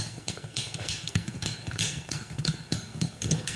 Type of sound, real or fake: fake